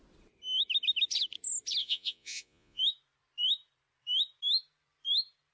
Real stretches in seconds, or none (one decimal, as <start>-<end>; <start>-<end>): 0.0-1.8; 2.8-5.5